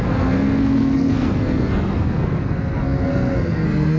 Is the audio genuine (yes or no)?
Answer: no